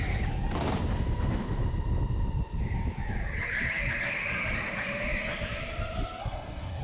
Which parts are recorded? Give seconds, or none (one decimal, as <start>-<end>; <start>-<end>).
0.0-6.2